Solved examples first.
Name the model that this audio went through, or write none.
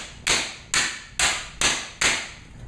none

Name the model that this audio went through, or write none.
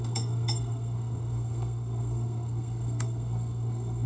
codec, SNAC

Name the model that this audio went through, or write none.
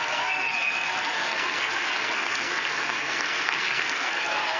codec, SNAC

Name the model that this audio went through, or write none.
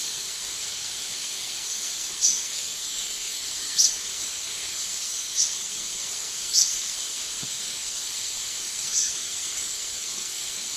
codec, SNAC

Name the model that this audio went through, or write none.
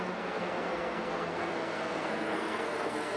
codec, SNAC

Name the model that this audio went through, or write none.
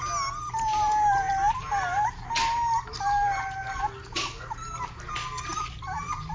none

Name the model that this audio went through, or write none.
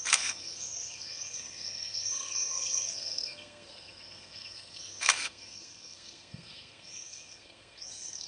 codec, SNAC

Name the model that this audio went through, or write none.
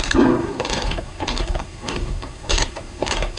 codec, SNAC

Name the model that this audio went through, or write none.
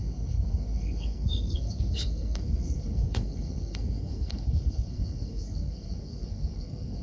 codec, SNAC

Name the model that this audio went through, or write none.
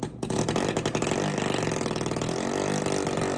none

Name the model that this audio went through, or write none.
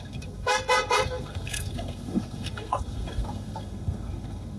codec, SNAC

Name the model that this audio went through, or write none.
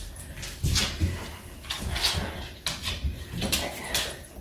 none